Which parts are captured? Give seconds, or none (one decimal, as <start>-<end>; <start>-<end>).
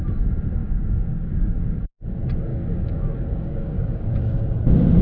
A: 0.0-0.6; 1.8-2.5; 4.4-5.0